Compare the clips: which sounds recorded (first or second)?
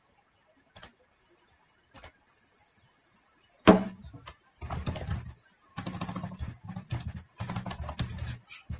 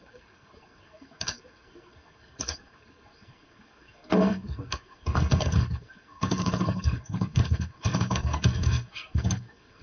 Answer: first